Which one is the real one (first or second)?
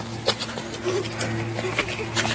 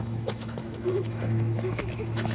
first